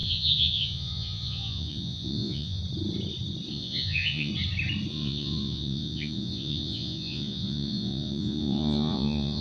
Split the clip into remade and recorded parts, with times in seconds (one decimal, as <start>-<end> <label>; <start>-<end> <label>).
0.0-2.6 remade; 2.6-3.5 recorded; 3.5-4.3 remade; 4.3-4.9 recorded; 4.9-9.4 remade